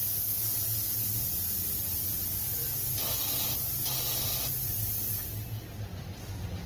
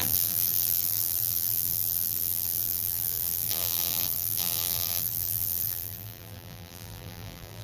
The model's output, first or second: second